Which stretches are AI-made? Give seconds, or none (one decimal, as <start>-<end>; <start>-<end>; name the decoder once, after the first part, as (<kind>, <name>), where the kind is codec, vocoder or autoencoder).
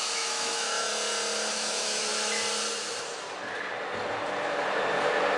0.0-0.9 (autoencoder, DAC-VAE); 1.5-2.1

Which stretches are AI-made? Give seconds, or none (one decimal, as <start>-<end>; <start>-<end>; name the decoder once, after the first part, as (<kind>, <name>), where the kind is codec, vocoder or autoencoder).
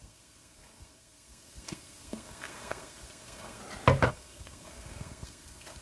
0.0-3.6 (codec, SNAC); 4.1-5.8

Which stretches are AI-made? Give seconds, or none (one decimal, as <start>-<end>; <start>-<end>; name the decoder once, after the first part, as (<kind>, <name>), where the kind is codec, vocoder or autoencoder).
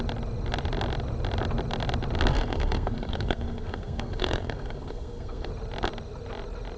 2.3-5.5 (codec, SNAC)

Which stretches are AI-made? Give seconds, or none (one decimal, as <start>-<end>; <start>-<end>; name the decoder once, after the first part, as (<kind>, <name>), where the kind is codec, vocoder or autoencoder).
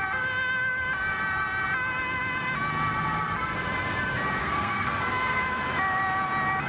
4.4-5.4 (codec, SNAC)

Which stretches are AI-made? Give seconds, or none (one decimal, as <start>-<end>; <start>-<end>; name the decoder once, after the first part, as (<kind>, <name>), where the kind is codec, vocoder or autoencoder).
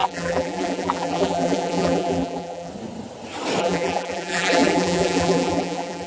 0.0-2.7 (vocoder, BigVGAN v2); 3.6-6.1